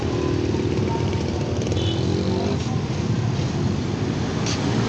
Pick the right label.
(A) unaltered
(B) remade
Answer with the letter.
A